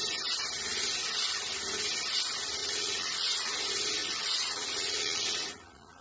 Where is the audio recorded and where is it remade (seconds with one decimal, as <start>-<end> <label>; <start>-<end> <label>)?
0.0-2.6 recorded; 2.6-3.5 remade; 3.5-4.0 recorded; 4.0-6.0 remade